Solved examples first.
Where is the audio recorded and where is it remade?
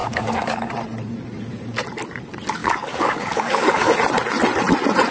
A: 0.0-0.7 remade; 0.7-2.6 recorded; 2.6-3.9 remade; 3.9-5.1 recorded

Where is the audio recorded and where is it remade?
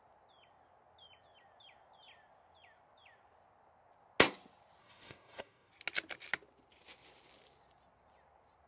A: 0.0-4.8 recorded; 4.8-5.7 remade; 5.7-8.7 recorded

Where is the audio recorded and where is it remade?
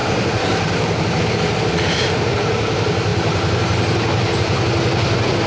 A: 0.0-5.5 recorded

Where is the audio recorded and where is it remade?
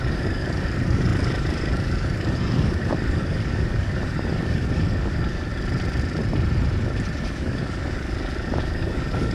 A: 0.0-5.5 remade; 5.5-7.2 recorded; 7.2-9.3 remade